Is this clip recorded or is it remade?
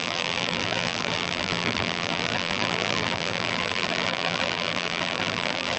remade